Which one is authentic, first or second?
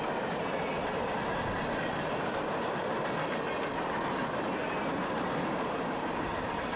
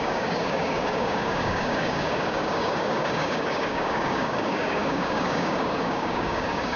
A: first